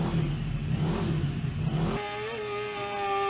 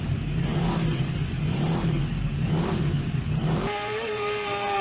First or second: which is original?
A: first